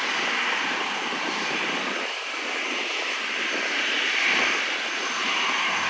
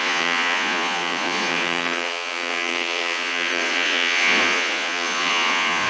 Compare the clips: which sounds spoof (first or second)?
second